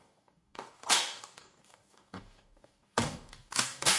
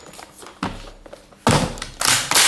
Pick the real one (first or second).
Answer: second